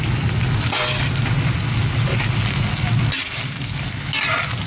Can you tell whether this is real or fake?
real